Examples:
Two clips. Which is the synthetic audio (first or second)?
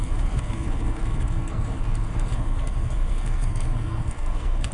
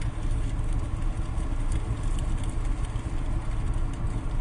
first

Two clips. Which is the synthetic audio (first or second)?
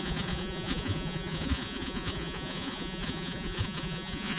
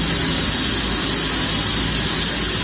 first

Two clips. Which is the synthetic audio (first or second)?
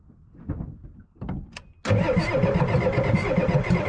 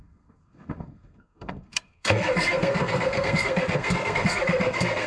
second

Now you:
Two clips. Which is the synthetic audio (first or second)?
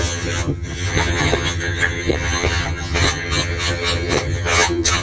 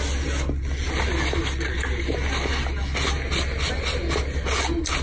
first